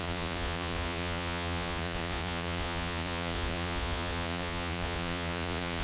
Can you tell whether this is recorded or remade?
remade